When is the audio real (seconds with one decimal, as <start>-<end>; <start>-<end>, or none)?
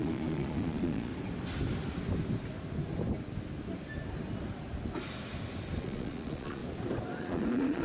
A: 1.1-5.8; 6.6-7.2